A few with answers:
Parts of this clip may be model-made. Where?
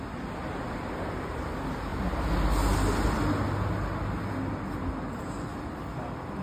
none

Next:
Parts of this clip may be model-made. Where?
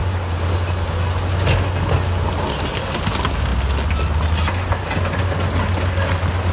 none